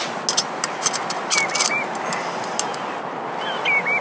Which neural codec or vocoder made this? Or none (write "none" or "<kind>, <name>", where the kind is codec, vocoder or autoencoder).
none